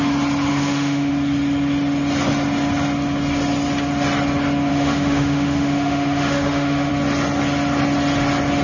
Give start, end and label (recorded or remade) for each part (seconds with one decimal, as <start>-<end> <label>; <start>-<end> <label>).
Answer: 0.0-0.5 recorded; 0.5-1.1 remade; 1.1-4.7 recorded; 4.7-6.9 remade; 6.9-8.6 recorded